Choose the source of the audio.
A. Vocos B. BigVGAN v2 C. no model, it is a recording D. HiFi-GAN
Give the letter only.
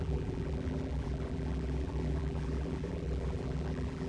B